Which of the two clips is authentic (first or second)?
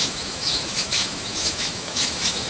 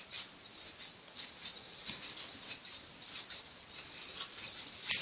second